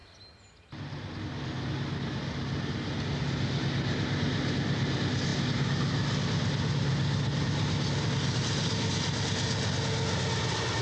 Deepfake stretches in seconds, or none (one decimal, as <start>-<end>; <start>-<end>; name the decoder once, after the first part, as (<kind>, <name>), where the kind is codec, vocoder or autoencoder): none